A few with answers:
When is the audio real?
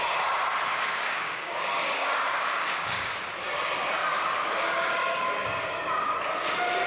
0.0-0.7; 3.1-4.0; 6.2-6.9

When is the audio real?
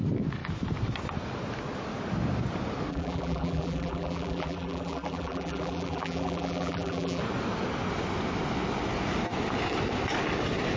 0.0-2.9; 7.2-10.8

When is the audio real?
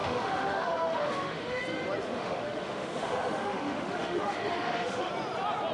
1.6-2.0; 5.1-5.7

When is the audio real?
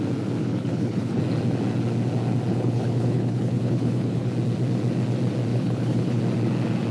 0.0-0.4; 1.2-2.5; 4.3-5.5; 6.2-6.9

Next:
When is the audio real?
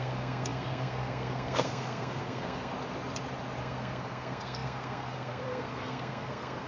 2.7-3.6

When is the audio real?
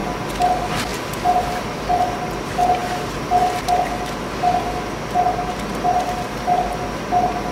0.0-7.5